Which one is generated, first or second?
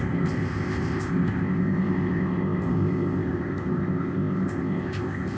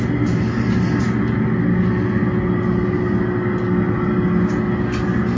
first